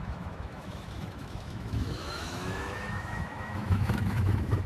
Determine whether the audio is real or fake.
fake